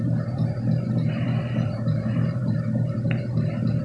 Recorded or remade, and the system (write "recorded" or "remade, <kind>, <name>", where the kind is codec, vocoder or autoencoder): remade, vocoder, BigVGAN v2